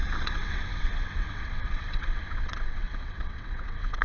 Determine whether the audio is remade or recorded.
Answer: remade